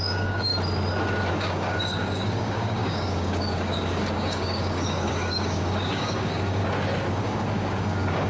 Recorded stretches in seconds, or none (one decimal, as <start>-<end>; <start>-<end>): 0.5-1.3; 6.6-7.1